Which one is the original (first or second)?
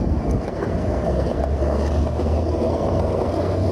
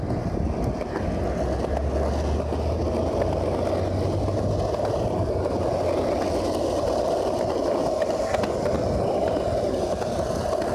second